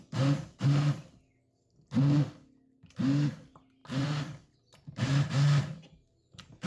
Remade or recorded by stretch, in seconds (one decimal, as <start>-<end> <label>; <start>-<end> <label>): 0.0-6.7 recorded